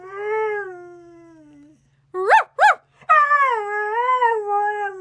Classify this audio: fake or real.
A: real